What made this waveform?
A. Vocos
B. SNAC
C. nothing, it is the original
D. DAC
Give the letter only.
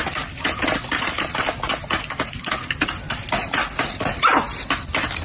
C